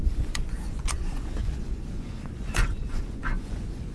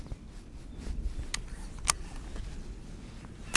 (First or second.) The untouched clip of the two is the second